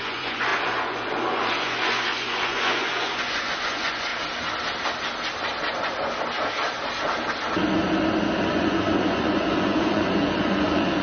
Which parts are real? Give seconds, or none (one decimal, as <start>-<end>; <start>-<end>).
4.1-8.4